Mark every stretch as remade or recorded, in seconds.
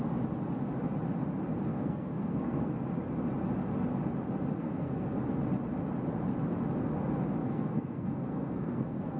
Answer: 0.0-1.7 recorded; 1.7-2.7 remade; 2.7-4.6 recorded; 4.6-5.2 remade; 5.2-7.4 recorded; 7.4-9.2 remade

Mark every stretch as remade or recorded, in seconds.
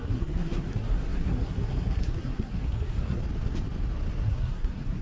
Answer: 0.0-3.2 remade; 3.2-4.2 recorded; 4.2-5.0 remade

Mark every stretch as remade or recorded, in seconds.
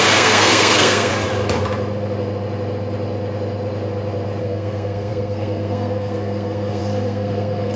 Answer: 0.0-1.1 remade; 1.1-4.4 recorded; 4.4-7.8 remade